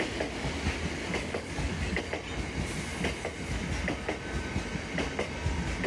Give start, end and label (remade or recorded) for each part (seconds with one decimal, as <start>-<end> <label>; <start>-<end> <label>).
0.0-1.0 recorded; 1.0-2.0 remade; 2.0-5.9 recorded